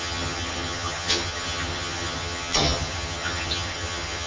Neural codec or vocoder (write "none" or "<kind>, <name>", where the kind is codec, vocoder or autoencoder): vocoder, HiFi-GAN